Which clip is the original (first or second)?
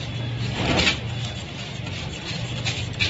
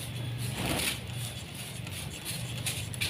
first